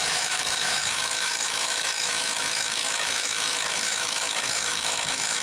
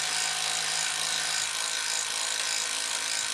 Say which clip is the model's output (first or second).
first